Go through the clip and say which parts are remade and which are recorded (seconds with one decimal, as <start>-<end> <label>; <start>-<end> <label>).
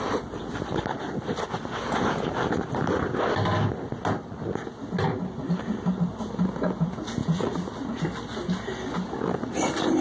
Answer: 0.0-7.2 recorded; 7.2-8.0 remade; 8.0-10.0 recorded